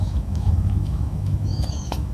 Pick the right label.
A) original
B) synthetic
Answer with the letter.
B